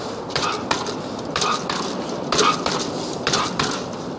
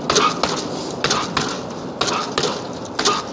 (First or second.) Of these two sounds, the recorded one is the second